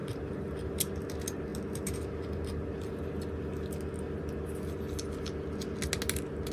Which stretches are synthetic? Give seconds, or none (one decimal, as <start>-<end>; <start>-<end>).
0.0-0.9